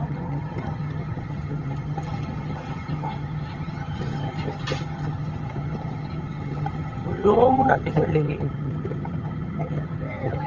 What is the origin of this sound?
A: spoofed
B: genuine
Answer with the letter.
A